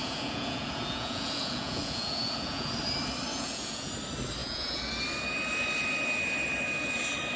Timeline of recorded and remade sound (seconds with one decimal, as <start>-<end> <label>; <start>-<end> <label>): 0.0-2.7 remade; 2.7-3.3 recorded; 3.3-3.9 remade; 3.9-4.4 recorded; 4.4-4.9 remade; 4.9-7.4 recorded